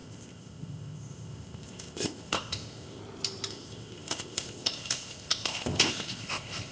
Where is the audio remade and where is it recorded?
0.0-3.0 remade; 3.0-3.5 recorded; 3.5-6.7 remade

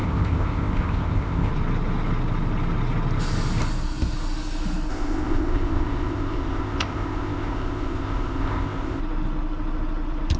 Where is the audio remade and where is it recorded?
0.0-1.5 remade; 1.5-4.9 recorded; 4.9-9.0 remade; 9.0-10.4 recorded

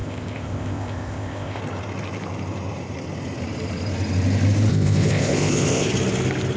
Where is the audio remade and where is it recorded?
0.0-1.6 remade; 1.6-4.7 recorded; 4.7-5.9 remade; 5.9-6.6 recorded

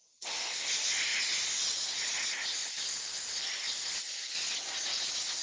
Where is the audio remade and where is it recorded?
0.0-5.4 recorded

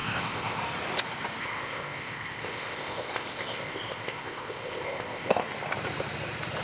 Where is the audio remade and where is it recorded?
0.0-0.6 remade; 0.6-1.4 recorded; 1.4-5.4 remade; 5.4-6.6 recorded

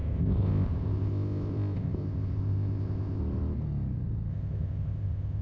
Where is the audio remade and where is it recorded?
0.0-3.2 remade; 3.2-4.3 recorded; 4.3-5.4 remade